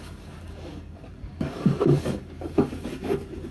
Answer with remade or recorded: remade